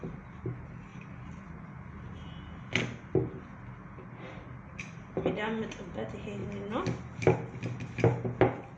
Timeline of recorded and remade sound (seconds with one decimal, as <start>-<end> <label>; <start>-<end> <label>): 0.0-8.8 recorded